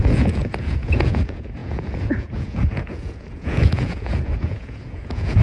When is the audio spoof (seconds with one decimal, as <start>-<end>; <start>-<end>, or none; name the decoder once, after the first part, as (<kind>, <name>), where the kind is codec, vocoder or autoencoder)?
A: 0.0-5.4 (vocoder, Vocos)